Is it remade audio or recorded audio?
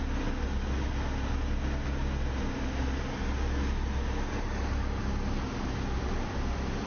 recorded